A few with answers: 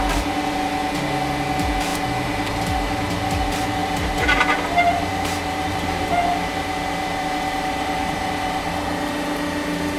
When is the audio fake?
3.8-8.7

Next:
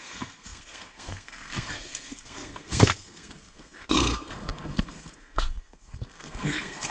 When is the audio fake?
0.0-6.9

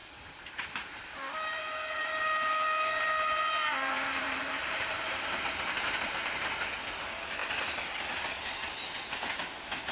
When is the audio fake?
0.0-1.6; 2.0-6.4

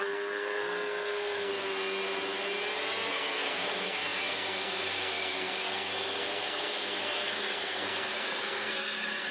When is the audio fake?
0.0-1.5; 3.1-9.3

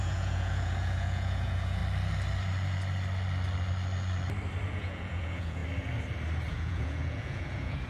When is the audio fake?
0.0-1.8; 4.7-5.6; 6.5-7.9

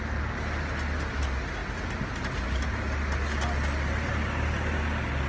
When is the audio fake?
none